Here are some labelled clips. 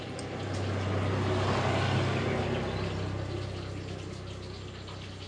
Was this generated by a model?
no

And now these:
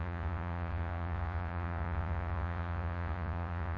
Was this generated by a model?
yes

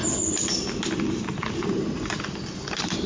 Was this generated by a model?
no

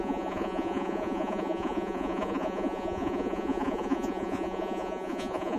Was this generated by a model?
yes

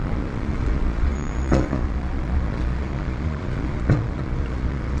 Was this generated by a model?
yes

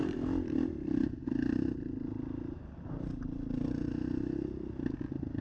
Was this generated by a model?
no